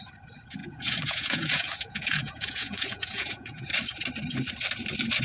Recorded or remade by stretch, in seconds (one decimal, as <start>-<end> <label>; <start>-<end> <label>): 0.0-0.6 recorded; 0.6-3.7 remade; 3.7-5.2 recorded